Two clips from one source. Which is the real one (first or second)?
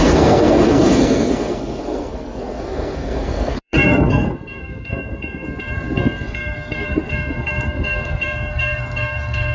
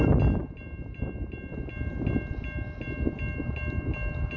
second